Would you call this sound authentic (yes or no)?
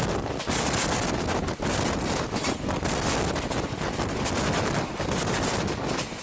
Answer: yes